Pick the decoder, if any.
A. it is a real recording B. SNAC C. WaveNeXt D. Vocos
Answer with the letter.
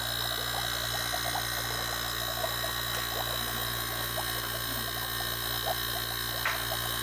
A